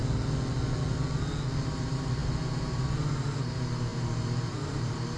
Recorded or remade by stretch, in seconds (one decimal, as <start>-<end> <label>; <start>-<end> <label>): 0.0-1.7 recorded; 1.7-5.2 remade